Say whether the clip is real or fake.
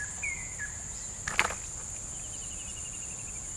real